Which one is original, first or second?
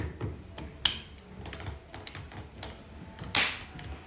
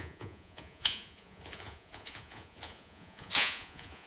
first